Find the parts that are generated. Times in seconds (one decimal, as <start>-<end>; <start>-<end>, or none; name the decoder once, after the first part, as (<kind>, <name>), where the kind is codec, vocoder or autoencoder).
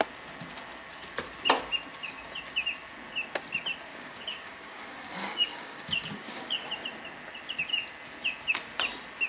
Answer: 3.9-6.7 (codec, DAC)